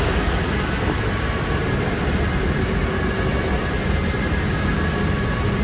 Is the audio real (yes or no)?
yes